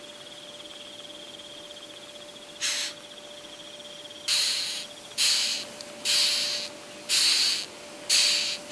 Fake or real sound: real